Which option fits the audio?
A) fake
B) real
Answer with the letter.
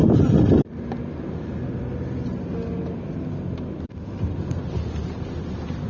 B